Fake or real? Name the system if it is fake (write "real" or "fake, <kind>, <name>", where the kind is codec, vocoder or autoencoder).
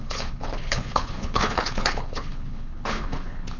fake, codec, HILCodec